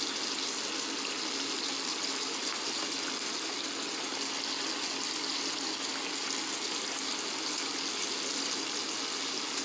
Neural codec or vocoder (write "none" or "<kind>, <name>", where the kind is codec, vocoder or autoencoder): none